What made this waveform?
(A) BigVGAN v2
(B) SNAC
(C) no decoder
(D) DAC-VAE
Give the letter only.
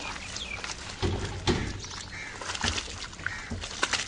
C